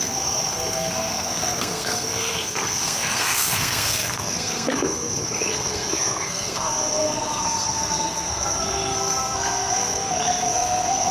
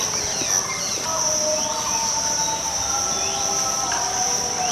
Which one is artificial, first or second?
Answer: first